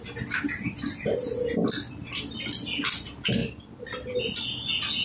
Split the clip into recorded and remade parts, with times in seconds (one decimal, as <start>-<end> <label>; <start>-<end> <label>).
0.0-5.0 recorded